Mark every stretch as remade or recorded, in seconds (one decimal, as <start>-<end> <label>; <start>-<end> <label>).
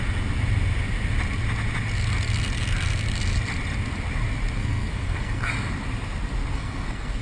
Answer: 0.0-4.6 recorded; 4.6-5.5 remade; 5.5-6.5 recorded; 6.5-7.2 remade